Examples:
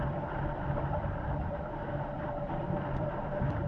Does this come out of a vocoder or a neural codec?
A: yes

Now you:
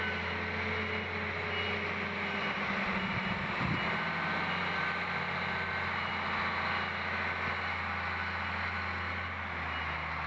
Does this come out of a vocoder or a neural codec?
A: no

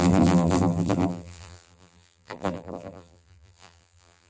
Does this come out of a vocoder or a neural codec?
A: yes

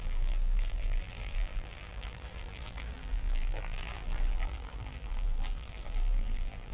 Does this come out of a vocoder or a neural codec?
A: yes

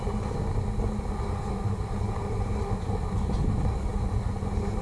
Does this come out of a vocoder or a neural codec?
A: no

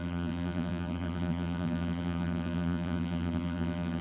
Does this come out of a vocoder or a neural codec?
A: yes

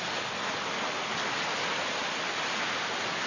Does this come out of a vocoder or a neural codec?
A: no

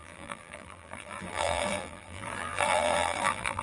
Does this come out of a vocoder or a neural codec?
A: yes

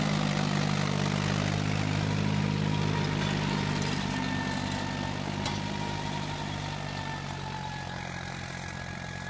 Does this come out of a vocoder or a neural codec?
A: no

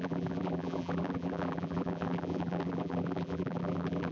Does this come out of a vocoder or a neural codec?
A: yes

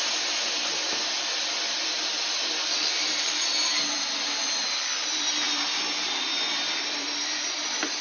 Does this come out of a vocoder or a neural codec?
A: yes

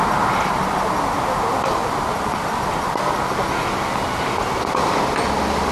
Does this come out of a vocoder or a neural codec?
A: no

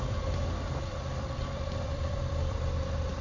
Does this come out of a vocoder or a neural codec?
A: yes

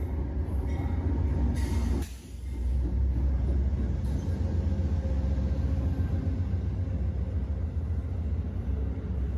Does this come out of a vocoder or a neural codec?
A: no